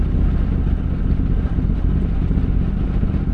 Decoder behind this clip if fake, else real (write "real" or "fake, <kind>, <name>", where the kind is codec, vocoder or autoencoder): real